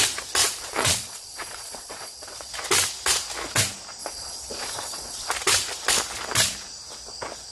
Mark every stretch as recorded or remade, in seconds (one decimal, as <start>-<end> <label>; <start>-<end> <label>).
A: 0.0-0.4 recorded; 0.4-2.5 remade; 2.5-4.0 recorded; 4.0-5.3 remade; 5.3-7.5 recorded